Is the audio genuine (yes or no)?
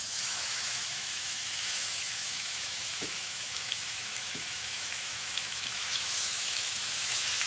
no